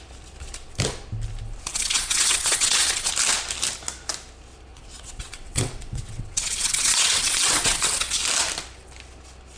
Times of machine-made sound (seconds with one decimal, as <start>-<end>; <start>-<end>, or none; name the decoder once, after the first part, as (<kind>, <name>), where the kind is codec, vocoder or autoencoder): 1.7-3.1 (vocoder, WaveNeXt); 4.7-8.2